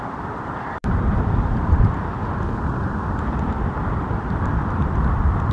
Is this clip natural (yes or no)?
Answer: no